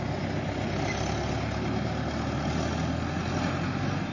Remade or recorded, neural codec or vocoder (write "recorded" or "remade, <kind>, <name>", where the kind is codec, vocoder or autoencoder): recorded